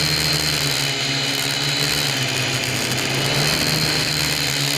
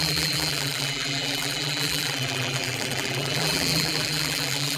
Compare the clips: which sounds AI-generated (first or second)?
second